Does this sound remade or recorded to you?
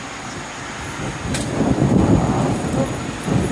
recorded